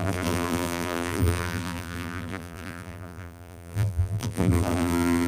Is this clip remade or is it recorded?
remade